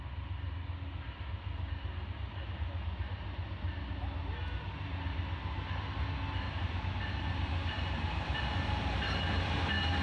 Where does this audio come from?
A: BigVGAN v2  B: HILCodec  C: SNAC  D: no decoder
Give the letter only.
D